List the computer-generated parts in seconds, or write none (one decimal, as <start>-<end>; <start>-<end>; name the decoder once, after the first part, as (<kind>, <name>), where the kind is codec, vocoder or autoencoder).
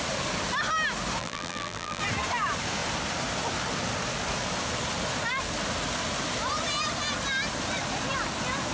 1.2-2.0 (vocoder, BigVGAN v2)